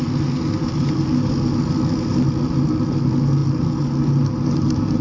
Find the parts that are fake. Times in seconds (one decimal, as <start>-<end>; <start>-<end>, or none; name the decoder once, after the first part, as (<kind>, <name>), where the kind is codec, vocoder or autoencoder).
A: none